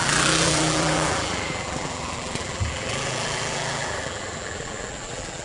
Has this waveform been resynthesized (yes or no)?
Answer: yes